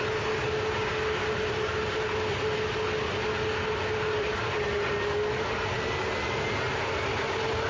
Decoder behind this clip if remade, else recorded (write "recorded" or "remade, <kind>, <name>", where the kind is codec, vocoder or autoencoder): recorded